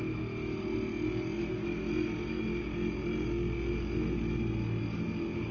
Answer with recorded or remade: recorded